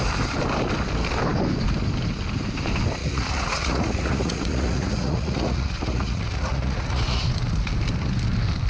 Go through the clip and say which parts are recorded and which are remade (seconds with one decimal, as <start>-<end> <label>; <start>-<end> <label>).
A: 0.0-3.0 recorded; 3.0-7.2 remade; 7.2-8.7 recorded